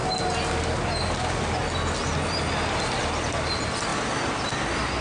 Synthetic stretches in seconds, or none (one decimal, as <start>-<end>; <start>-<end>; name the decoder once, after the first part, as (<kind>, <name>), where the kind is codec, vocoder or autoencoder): none